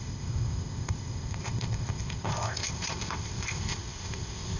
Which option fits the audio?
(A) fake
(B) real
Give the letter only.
A